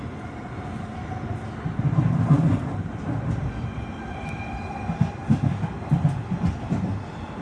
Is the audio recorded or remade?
recorded